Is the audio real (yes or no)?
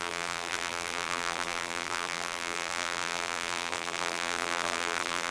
no